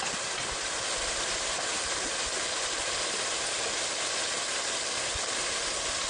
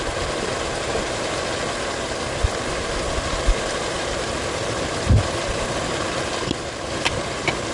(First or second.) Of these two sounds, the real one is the second